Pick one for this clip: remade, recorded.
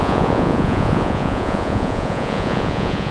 remade